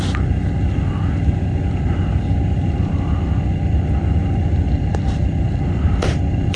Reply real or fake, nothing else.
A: real